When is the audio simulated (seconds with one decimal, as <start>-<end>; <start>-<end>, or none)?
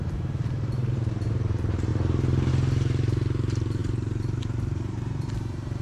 0.0-5.8